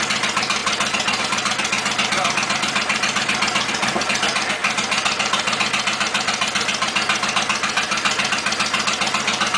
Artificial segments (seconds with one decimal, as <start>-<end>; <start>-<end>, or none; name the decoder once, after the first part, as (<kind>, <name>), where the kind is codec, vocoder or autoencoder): 0.6-1.2 (vocoder, BigVGAN v2)